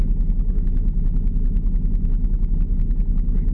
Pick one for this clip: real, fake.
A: real